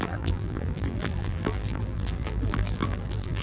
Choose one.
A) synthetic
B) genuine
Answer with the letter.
A